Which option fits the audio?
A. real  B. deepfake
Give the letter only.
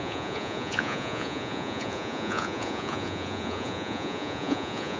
B